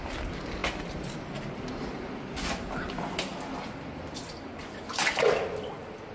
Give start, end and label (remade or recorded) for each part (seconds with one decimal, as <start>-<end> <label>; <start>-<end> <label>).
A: 0.0-6.1 recorded